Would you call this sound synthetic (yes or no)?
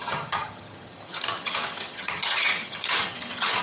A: yes